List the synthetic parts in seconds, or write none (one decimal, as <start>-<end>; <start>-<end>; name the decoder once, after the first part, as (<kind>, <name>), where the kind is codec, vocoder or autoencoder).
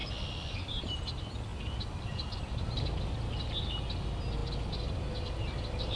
none